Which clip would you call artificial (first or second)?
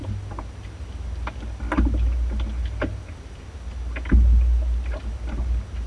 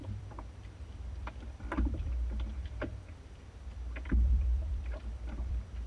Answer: second